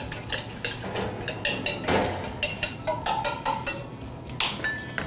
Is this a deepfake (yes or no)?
no